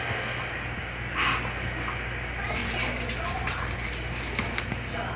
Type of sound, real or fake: real